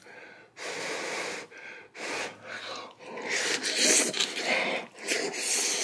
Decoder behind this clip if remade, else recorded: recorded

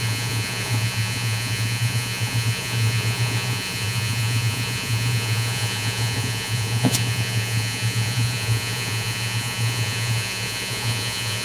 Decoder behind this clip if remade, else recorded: remade, vocoder, Vocos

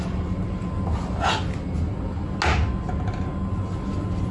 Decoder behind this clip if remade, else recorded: recorded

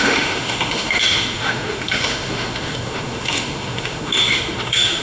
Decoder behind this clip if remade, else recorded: remade, autoencoder, DAC-VAE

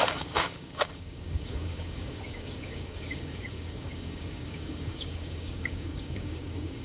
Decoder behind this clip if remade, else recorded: remade, codec, DAC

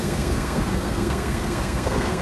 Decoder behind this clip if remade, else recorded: remade, codec, SNAC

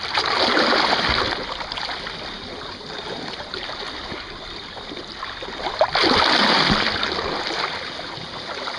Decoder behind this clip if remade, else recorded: recorded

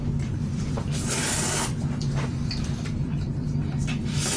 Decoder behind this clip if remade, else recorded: remade, vocoder, BigVGAN v2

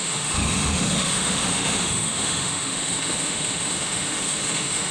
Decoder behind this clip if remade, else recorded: remade, autoencoder, DAC-VAE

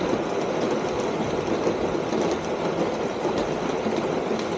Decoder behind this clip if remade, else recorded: recorded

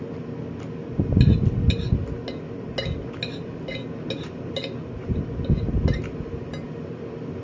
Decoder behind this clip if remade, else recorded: recorded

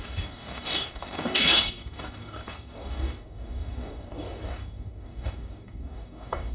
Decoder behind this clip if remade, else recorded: remade, codec, DAC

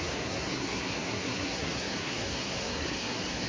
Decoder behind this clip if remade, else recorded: remade, codec, SNAC